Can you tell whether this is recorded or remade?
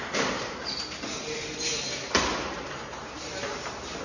recorded